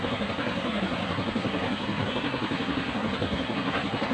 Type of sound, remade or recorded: remade